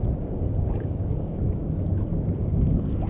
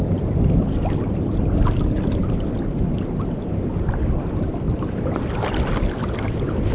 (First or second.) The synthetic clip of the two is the first